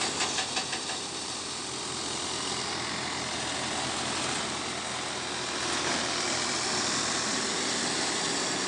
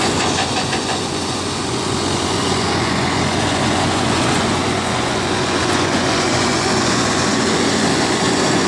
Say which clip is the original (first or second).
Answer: first